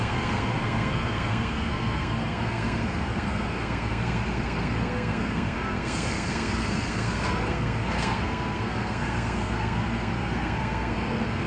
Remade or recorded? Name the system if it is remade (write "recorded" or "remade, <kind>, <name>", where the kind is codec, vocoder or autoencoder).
remade, codec, SNAC